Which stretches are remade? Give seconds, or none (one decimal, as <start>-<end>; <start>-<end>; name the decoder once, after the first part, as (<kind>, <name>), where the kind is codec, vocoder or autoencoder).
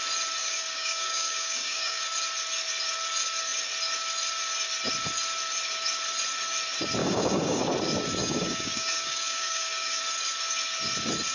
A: 0.4-2.0 (codec, DAC); 7.0-7.6; 8.2-10.0